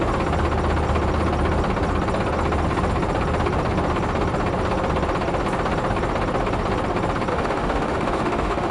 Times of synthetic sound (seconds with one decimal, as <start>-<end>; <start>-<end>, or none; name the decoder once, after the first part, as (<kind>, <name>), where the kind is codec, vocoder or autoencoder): 7.3-8.7 (autoencoder, DAC-VAE)